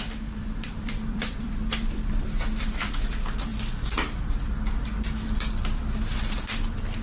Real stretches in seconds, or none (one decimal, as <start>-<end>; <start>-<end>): 0.0-0.4; 2.9-7.0